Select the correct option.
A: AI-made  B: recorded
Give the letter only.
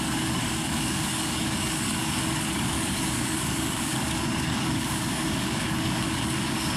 A